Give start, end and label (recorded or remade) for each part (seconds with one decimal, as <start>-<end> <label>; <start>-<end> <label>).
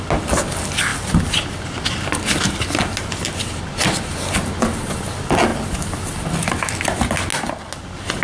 0.0-8.2 recorded